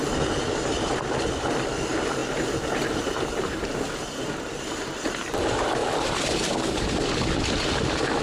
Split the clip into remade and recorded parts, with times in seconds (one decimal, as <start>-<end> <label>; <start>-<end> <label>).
0.0-2.2 recorded; 2.2-3.8 remade; 3.8-5.8 recorded; 5.8-7.1 remade; 7.1-8.2 recorded